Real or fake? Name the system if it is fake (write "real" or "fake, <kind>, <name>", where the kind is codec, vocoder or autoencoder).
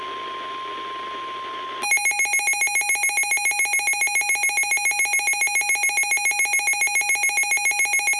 real